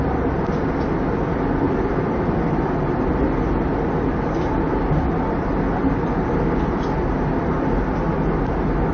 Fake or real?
real